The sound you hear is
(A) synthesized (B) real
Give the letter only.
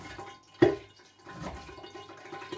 B